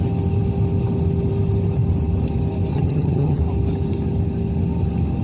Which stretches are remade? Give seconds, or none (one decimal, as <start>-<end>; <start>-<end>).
2.7-3.4